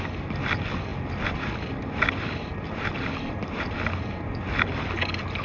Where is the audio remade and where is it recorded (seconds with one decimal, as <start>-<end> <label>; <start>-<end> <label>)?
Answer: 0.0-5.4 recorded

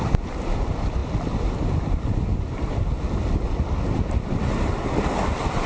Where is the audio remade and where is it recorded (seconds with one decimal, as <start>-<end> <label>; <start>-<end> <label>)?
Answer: 0.0-5.7 recorded

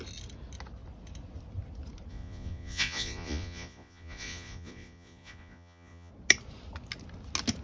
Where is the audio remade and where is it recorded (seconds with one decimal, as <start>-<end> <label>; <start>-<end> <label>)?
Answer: 0.0-2.1 recorded; 2.1-6.1 remade; 6.1-7.6 recorded

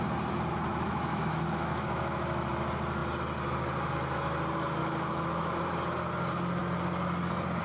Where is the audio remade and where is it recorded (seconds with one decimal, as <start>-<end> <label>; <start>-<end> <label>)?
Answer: 0.0-0.7 recorded; 0.7-2.5 remade; 2.5-4.8 recorded; 4.8-5.5 remade; 5.5-7.6 recorded

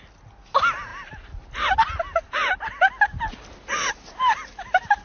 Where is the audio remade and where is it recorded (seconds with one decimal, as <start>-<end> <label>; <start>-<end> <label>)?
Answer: 0.0-5.0 recorded